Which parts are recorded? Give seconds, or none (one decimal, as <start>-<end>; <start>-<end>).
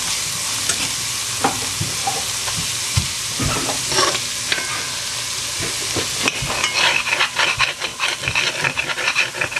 0.0-2.0; 3.2-7.9